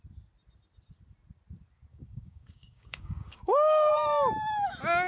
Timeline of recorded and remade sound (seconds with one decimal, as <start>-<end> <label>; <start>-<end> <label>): 0.0-1.9 recorded; 1.9-3.9 remade; 3.9-5.1 recorded